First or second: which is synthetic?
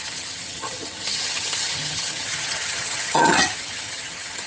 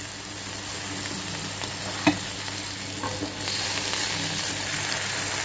first